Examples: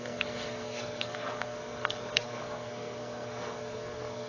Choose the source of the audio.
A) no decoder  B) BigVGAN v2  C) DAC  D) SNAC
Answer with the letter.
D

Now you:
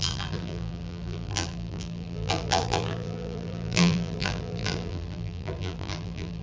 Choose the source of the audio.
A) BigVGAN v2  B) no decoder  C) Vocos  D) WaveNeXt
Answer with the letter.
A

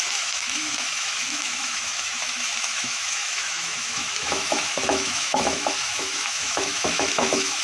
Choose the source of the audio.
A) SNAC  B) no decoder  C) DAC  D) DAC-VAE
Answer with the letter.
D